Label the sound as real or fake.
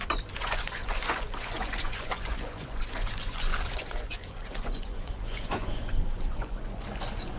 fake